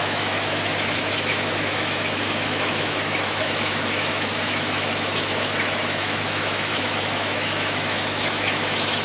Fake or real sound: fake